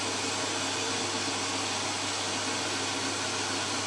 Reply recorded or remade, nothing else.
recorded